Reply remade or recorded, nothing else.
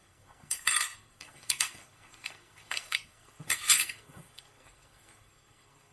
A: remade